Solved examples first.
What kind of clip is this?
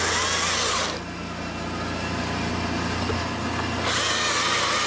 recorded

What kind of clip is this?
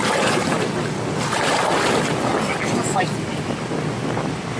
recorded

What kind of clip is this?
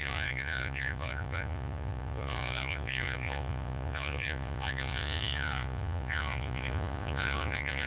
remade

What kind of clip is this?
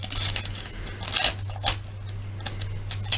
recorded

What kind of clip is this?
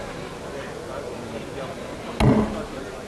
recorded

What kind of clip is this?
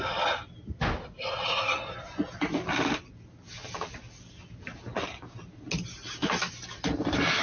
recorded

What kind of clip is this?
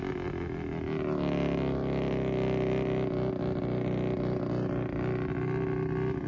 recorded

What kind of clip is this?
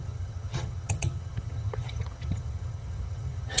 remade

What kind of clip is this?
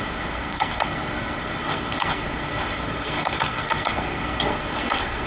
remade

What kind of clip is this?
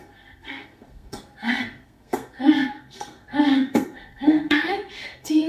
remade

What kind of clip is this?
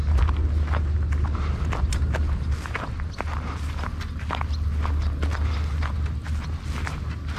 recorded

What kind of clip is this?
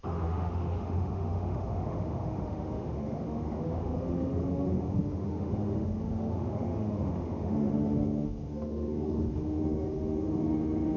remade